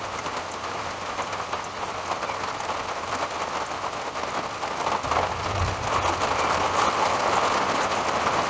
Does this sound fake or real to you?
real